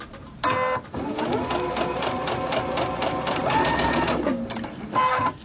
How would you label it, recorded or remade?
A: recorded